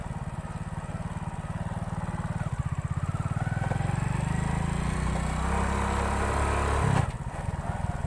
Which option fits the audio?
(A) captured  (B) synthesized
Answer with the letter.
A